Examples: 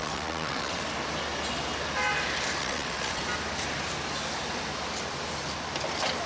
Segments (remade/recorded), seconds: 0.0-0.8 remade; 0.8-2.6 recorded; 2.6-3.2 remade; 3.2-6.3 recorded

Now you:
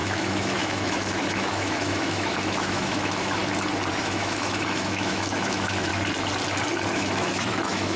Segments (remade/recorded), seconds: 0.0-3.4 remade; 3.4-3.9 recorded; 3.9-5.9 remade; 5.9-6.9 recorded; 6.9-8.0 remade

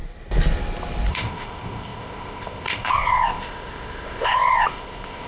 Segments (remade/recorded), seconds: 0.0-1.1 recorded; 1.1-5.3 remade

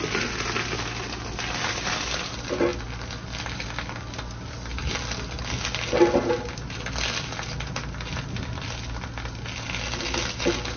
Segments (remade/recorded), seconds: 0.0-10.8 recorded